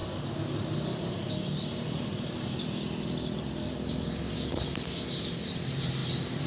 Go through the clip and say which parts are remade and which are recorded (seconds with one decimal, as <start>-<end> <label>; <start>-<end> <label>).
0.0-3.9 recorded; 3.9-6.5 remade